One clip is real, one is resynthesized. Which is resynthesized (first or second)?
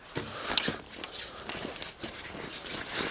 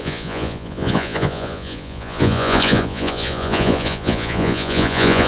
second